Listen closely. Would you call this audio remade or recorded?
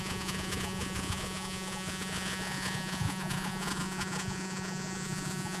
remade